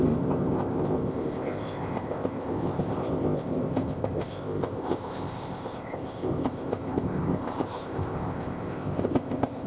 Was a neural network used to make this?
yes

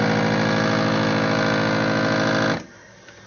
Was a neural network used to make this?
no